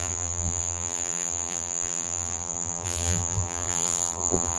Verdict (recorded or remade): remade